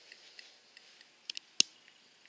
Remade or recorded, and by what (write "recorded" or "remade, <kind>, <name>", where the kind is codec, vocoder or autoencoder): recorded